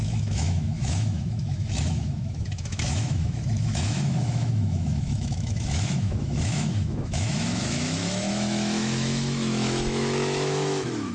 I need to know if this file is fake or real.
fake